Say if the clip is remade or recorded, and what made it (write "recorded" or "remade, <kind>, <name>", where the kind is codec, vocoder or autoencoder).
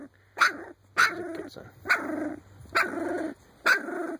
remade, vocoder, BigVGAN v2